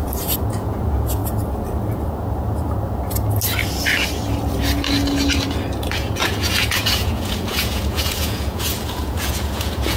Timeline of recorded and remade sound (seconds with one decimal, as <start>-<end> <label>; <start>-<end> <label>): 0.0-0.5 recorded; 0.5-1.2 remade; 1.2-5.9 recorded; 5.9-10.0 remade